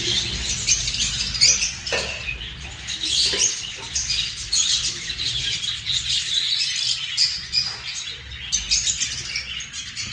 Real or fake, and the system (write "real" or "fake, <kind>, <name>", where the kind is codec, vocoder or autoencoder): real